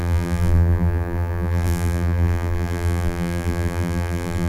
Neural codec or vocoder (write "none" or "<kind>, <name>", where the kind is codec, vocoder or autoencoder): vocoder, BigVGAN v2